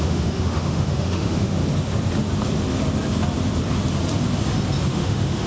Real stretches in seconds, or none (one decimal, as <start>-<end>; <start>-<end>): 1.6-4.9